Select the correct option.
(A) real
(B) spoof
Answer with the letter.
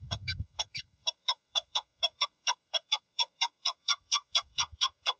B